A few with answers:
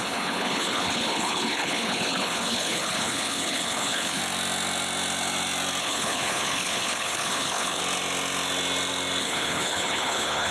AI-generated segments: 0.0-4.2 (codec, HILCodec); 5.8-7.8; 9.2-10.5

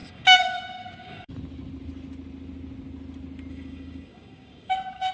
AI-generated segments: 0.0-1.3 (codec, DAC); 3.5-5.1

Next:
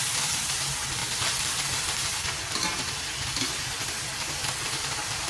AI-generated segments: none